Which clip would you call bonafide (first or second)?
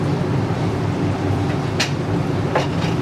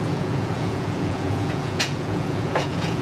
first